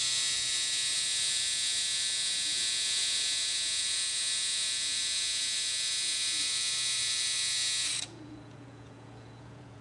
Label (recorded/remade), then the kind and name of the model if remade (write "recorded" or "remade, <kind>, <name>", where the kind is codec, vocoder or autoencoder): remade, vocoder, Vocos